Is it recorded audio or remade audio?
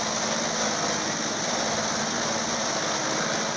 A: recorded